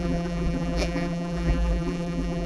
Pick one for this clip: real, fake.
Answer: fake